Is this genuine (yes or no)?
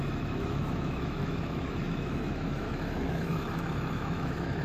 no